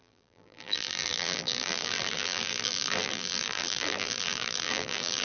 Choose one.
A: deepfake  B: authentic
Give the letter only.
A